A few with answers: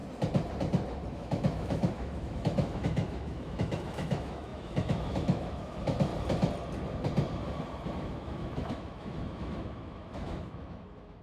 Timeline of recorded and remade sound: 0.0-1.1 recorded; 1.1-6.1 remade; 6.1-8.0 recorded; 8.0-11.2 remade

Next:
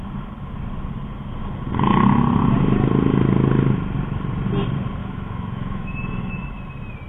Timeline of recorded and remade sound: 0.0-5.0 recorded; 5.0-6.6 remade; 6.6-7.1 recorded

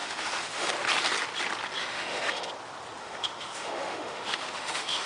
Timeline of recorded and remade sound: 0.0-0.7 remade; 0.7-1.8 recorded; 1.8-2.5 remade; 2.5-3.0 recorded; 3.0-5.1 remade

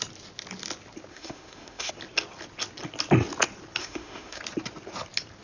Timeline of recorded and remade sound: 0.0-1.1 recorded; 1.1-1.9 remade; 1.9-3.8 recorded; 3.8-4.4 remade; 4.4-5.4 recorded